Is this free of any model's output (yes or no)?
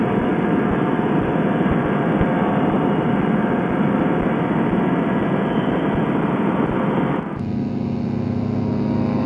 yes